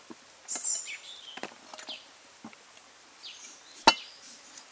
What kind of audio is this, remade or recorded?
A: recorded